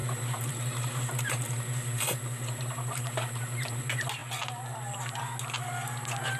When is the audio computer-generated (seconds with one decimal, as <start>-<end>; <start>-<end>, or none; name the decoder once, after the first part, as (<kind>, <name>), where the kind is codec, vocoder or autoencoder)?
0.0-3.8 (vocoder, BigVGAN v2)